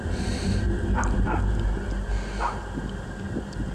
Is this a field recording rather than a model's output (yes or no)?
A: yes